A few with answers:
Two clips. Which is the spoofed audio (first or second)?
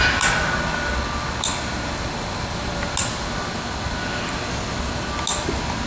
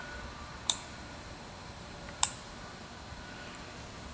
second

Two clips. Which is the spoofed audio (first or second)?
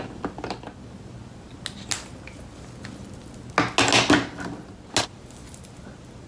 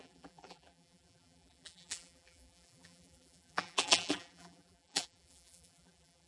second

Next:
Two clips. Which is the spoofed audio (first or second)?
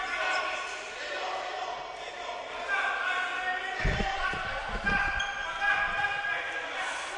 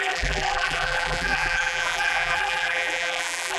second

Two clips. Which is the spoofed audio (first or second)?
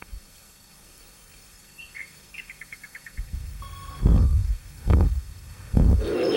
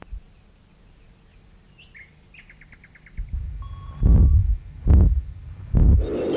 first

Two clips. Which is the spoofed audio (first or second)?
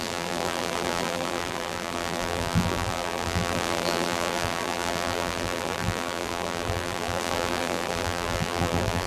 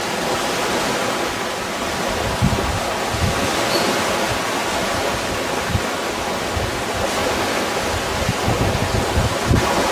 first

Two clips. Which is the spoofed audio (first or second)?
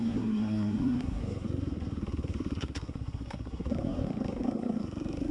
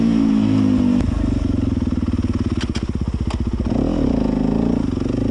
first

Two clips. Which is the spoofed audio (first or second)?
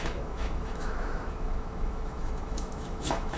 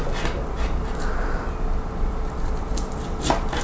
first